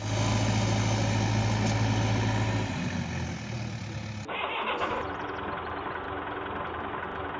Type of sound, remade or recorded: recorded